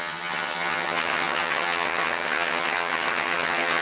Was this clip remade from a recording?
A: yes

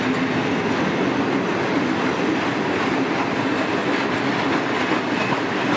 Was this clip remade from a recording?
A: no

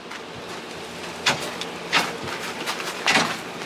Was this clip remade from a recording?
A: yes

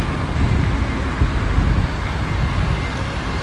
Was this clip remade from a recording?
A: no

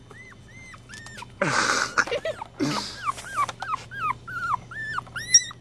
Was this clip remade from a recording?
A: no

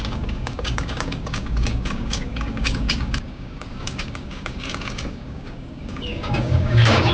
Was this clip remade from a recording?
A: yes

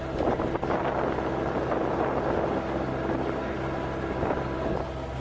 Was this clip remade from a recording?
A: no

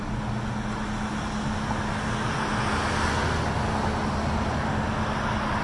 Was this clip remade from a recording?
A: no